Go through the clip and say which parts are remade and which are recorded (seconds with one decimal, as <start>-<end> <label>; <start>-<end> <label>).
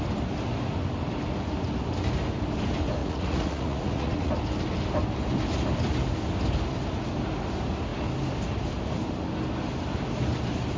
0.0-3.0 recorded; 3.0-4.3 remade; 4.3-10.8 recorded